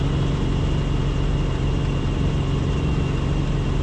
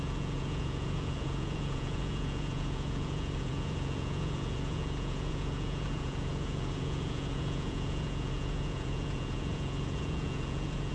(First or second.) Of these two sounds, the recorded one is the first